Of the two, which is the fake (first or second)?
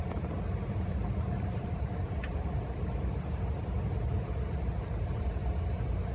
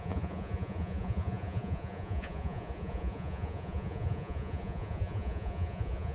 second